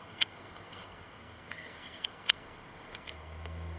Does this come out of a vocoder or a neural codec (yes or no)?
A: yes